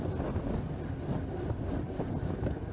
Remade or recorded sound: recorded